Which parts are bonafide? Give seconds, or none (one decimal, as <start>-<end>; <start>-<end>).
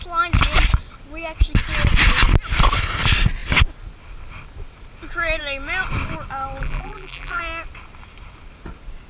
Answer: 0.0-6.6; 7.4-9.1